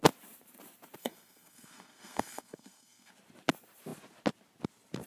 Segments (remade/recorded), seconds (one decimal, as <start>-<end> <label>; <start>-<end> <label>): 0.0-1.0 recorded; 1.0-3.1 remade; 3.1-5.1 recorded